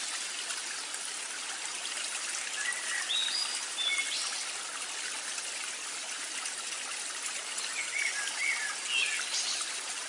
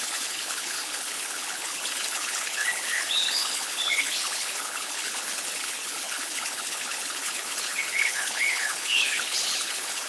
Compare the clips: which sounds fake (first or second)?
second